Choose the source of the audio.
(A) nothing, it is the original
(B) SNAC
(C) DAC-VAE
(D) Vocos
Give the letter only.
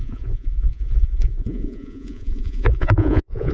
D